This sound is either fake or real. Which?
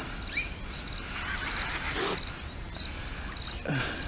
real